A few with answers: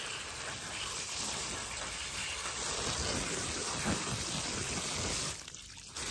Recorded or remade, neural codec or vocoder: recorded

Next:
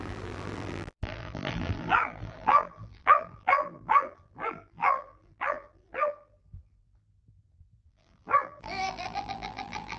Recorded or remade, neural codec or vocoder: remade, vocoder, BigVGAN v2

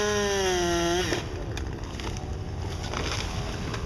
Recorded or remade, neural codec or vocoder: recorded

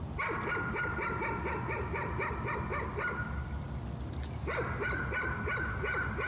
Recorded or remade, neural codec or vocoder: recorded